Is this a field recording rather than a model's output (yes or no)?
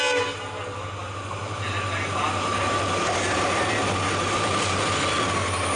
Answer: yes